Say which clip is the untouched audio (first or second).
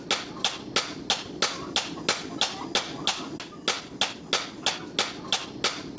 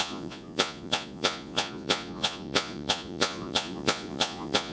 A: first